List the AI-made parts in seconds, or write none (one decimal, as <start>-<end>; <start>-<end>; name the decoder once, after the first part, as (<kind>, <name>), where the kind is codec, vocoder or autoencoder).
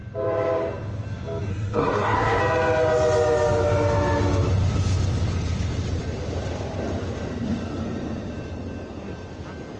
1.5-2.4 (codec, SNAC)